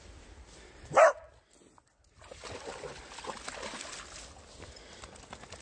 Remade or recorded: recorded